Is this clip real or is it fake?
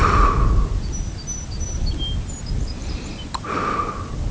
real